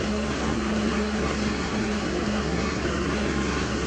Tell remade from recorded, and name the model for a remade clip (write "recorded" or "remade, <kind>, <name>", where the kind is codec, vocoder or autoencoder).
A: remade, codec, SNAC